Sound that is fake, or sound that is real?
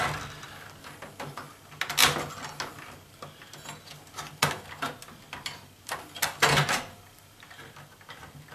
real